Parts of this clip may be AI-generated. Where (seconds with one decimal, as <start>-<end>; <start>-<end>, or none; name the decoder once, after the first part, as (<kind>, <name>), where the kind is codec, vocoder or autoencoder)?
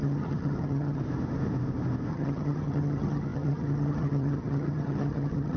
0.0-1.0 (vocoder, HiFi-GAN); 2.1-5.6